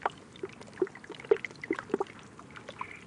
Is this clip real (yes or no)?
yes